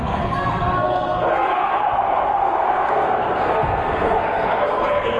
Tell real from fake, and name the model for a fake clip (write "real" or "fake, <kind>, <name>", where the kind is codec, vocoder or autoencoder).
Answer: fake, codec, SNAC